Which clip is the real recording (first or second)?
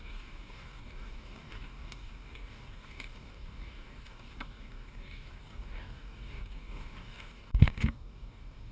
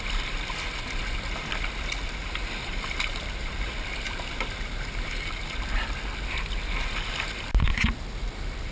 second